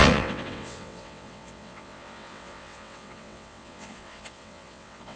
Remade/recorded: remade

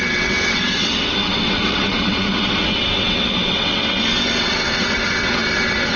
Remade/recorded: remade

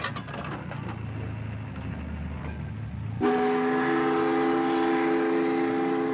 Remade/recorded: recorded